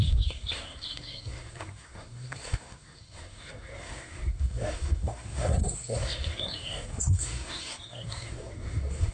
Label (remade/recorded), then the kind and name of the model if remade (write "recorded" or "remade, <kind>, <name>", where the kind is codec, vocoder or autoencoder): remade, codec, SNAC